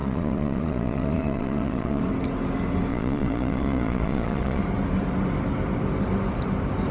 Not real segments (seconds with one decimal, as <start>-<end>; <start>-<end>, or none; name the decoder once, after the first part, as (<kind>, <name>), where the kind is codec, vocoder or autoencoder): 0.0-2.0 (vocoder, Vocos); 2.9-4.6